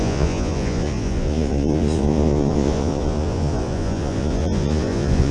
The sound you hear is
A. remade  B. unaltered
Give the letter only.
A